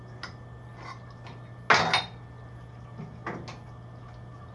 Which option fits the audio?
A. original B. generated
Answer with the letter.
A